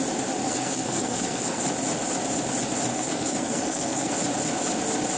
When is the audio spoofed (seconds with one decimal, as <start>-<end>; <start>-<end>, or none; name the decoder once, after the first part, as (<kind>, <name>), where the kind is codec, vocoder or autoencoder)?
0.4-1.6 (codec, SNAC); 2.9-4.1